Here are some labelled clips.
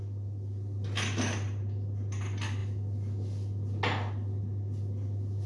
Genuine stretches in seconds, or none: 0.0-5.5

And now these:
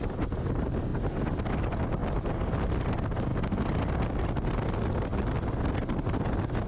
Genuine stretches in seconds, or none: 0.0-6.7

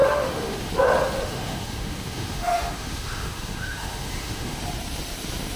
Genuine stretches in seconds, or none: 0.7-1.2; 4.6-5.6

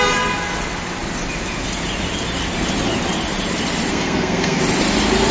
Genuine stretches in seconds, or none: 0.0-3.9; 4.6-5.3

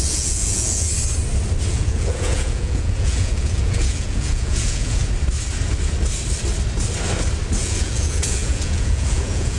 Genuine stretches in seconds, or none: 0.9-1.7; 5.0-7.6

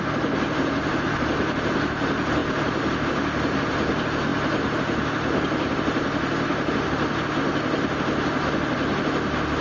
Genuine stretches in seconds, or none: 0.0-9.6

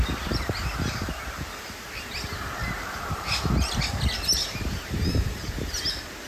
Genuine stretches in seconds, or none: 0.0-2.6; 3.4-4.4; 5.8-6.3

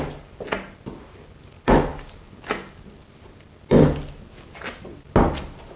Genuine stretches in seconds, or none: 0.0-5.8